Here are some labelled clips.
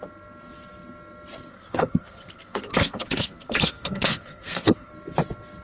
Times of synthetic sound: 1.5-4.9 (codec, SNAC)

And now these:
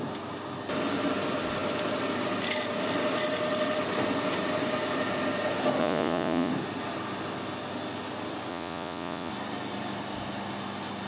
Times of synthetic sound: 5.8-6.5 (vocoder, Vocos); 8.5-9.3

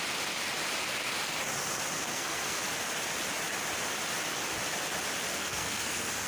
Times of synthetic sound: 2.1-2.6 (codec, SNAC); 5.3-6.3